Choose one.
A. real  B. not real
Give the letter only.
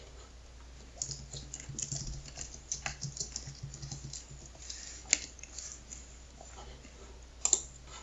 A